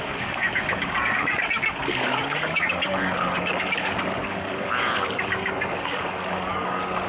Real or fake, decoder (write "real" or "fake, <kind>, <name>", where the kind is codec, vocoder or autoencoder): fake, codec, DAC